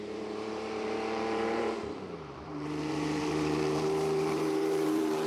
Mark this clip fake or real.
fake